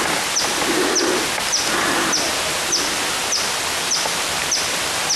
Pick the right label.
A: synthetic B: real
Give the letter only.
B